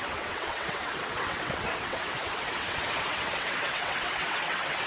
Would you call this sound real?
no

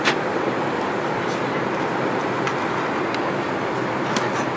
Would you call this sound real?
yes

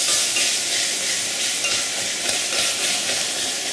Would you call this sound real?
yes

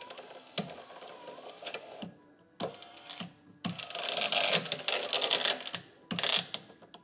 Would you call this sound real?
yes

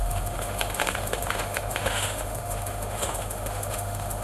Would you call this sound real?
no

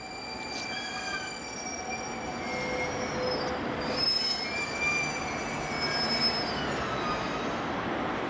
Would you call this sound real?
yes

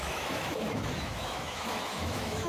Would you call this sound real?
no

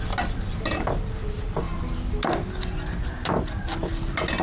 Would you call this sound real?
yes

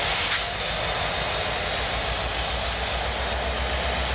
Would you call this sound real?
yes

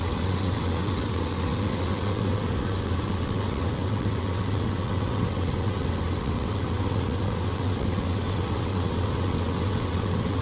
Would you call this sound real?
no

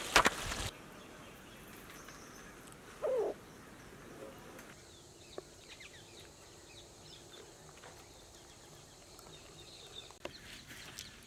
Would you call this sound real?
yes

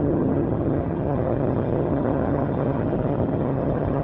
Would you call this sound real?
no